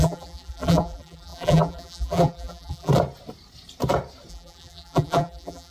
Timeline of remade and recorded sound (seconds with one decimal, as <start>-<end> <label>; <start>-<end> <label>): 0.0-2.9 remade; 2.9-4.3 recorded; 4.3-5.7 remade